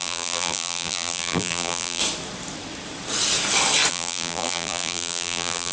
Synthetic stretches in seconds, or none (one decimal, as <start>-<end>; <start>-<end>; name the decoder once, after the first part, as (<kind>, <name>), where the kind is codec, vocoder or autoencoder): 0.0-2.0 (vocoder, BigVGAN v2); 3.9-5.7